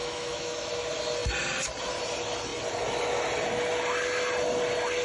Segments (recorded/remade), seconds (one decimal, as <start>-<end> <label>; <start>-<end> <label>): 0.0-0.7 remade; 0.7-5.0 recorded